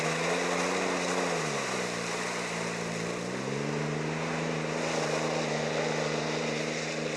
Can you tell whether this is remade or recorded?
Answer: recorded